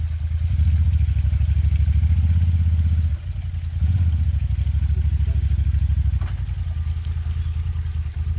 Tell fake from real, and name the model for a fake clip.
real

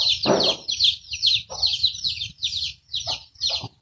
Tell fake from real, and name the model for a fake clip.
real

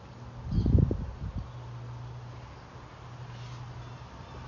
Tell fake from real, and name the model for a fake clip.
real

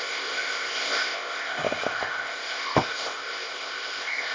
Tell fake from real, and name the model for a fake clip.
fake, codec, ZipCodec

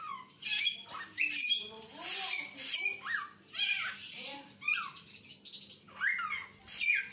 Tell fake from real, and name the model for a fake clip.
real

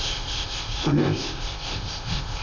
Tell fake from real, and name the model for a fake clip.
fake, codec, ZipCodec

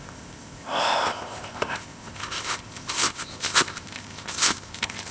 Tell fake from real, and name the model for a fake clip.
fake, codec, ZipCodec